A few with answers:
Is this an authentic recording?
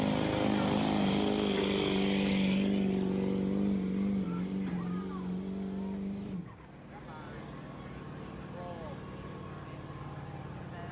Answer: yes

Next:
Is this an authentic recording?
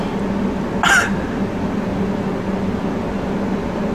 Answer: yes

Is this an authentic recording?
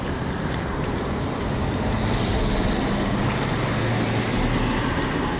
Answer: yes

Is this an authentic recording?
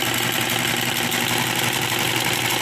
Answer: no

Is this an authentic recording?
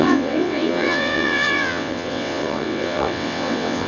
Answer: no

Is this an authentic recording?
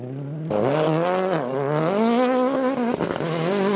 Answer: yes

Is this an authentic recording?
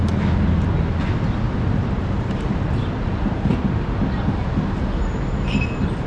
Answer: yes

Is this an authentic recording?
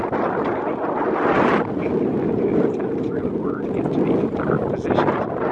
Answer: yes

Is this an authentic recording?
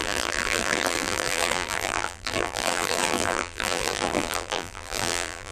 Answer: no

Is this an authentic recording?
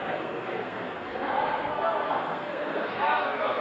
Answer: no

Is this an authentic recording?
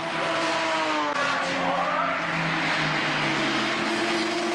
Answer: yes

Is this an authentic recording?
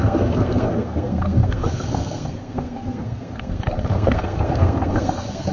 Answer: no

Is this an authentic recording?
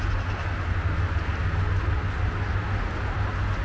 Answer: yes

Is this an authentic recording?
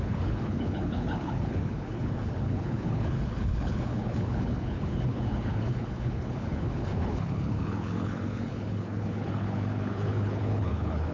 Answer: no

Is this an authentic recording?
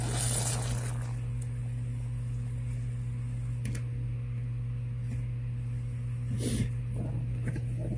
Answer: yes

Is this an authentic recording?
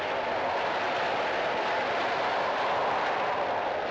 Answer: yes